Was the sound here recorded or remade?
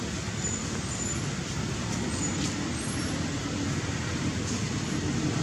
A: recorded